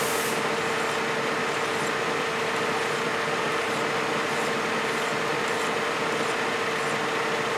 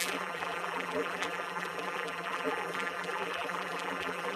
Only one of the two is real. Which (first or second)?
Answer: first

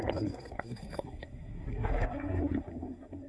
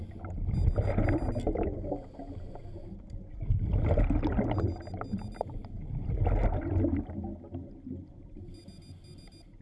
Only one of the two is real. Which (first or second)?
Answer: second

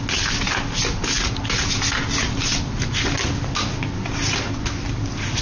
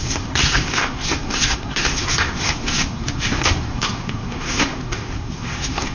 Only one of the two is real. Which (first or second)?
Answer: first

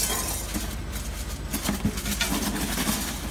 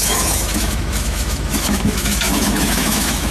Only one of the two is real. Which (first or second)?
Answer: first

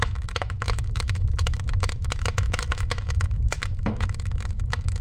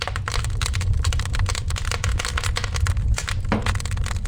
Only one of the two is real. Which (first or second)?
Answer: second